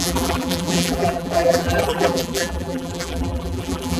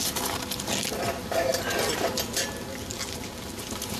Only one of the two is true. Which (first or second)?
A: second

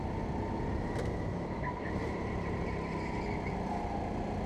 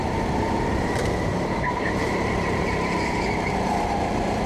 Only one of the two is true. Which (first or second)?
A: first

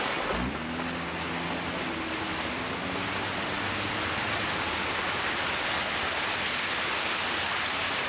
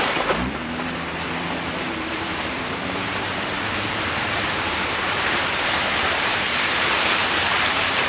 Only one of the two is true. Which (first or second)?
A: first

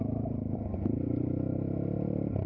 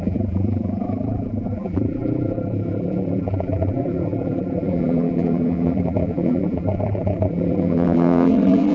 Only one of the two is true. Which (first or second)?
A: first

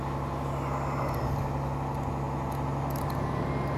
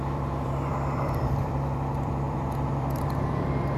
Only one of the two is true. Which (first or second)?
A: first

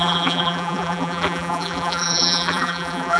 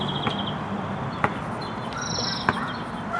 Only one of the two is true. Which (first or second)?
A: second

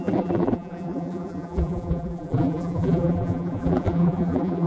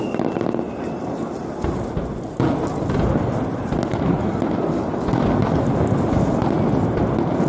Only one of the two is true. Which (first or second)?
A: second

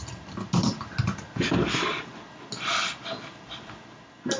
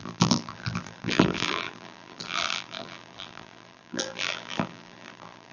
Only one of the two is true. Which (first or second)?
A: first